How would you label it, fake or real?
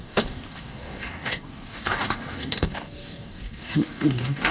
fake